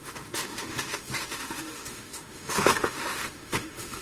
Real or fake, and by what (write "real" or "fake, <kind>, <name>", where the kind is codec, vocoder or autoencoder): fake, autoencoder, DAC-VAE